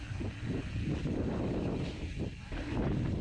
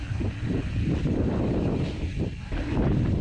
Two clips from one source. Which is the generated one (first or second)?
second